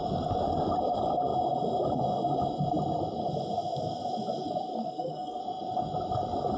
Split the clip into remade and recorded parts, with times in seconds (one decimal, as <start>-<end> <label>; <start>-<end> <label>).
0.0-4.8 recorded; 4.8-5.4 remade; 5.4-6.6 recorded